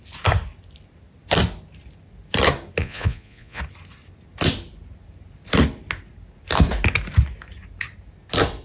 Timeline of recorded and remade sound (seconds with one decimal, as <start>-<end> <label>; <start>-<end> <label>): 0.0-2.8 recorded; 2.8-3.6 remade; 3.6-8.6 recorded